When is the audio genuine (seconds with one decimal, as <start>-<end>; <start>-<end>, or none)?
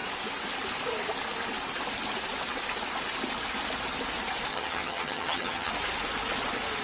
0.0-4.5; 5.7-6.8